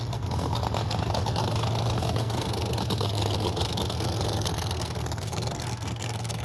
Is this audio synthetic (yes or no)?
yes